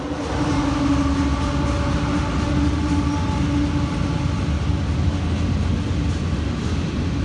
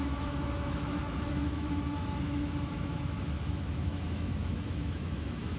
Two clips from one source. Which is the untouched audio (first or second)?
first